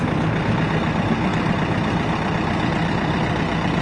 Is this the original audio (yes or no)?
yes